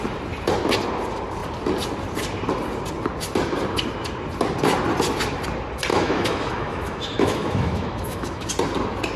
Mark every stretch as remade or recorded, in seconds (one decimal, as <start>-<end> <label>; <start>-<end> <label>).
0.0-5.9 recorded; 5.9-8.5 remade; 8.5-9.2 recorded